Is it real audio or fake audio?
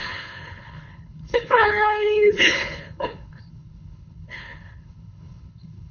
fake